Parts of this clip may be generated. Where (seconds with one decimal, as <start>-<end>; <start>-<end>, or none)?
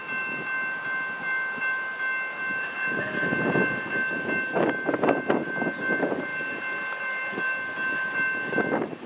none